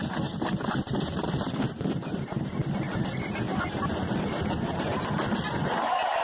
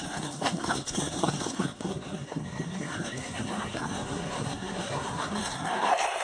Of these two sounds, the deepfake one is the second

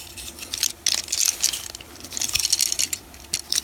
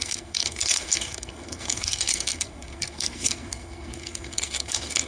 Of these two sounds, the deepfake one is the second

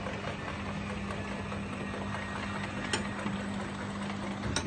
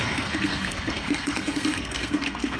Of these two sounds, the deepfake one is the second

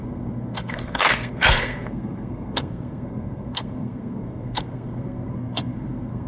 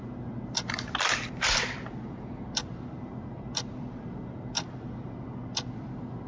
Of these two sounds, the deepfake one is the first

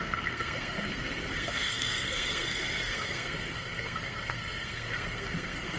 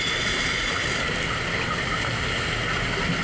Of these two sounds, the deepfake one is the first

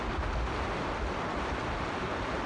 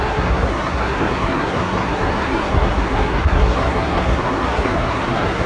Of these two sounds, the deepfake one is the second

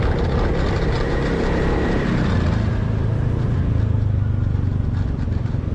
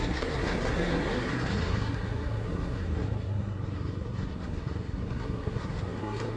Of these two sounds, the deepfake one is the second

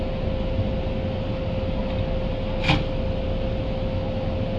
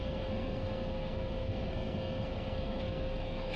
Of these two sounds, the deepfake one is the second